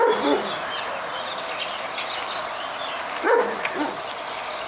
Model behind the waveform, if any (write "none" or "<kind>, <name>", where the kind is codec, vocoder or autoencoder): none